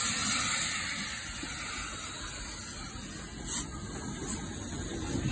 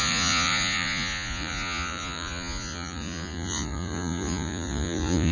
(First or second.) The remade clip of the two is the second